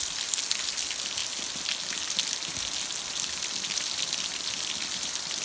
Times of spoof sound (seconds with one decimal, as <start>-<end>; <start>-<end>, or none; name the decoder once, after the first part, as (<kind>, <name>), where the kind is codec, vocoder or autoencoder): 0.0-1.2 (vocoder, BigVGAN v2); 3.0-5.4